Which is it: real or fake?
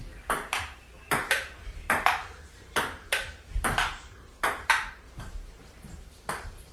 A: fake